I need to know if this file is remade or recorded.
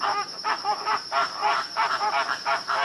remade